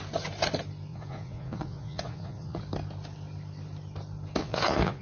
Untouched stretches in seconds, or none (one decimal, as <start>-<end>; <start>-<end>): 0.0-0.9; 2.6-4.4